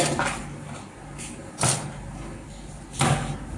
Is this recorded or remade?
recorded